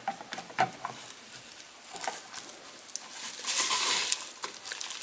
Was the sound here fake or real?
real